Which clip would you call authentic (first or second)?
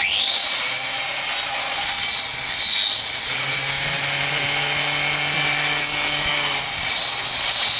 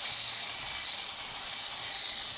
first